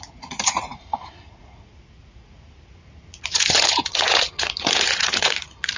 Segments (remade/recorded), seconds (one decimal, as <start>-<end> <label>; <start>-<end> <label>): 0.0-5.8 remade